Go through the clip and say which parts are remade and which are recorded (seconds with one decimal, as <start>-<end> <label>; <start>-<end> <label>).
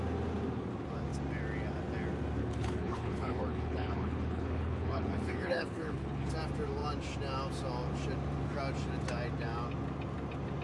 0.0-2.4 recorded; 2.4-6.3 remade; 6.3-10.6 recorded